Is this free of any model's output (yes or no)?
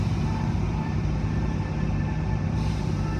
no